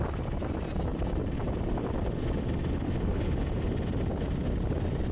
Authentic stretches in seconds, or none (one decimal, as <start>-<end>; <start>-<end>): 0.0-5.1